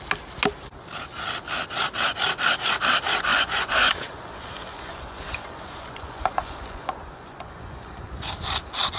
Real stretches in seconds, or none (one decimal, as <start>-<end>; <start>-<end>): 0.0-3.3; 8.3-9.0